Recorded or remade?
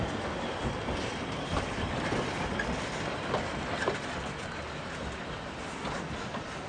recorded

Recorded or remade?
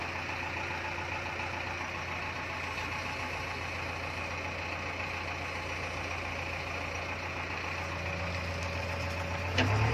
recorded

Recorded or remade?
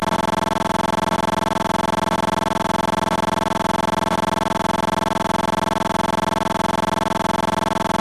recorded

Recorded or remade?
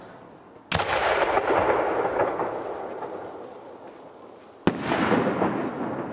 recorded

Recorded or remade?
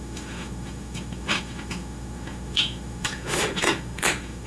remade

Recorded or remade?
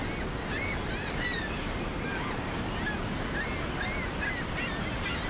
recorded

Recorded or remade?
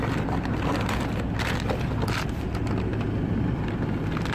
recorded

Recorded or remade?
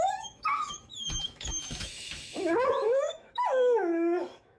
remade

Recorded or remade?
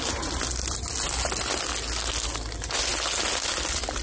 recorded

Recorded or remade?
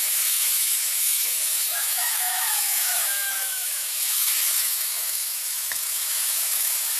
remade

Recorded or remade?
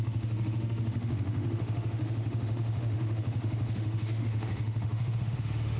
remade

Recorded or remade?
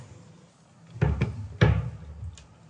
recorded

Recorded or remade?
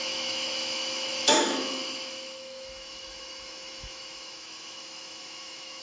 remade